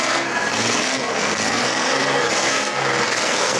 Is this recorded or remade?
remade